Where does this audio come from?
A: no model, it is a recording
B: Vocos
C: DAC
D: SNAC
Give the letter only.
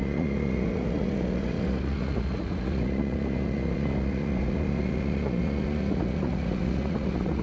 B